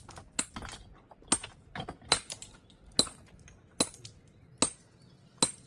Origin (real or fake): real